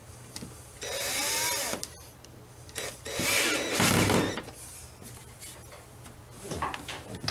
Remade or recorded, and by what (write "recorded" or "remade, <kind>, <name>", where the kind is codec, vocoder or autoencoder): recorded